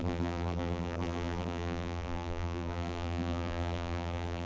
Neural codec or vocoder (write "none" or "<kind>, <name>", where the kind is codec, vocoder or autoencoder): vocoder, BigVGAN v2